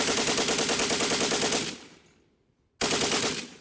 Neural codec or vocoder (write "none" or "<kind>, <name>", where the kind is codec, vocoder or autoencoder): none